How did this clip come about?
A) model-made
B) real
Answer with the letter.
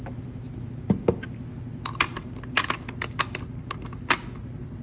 B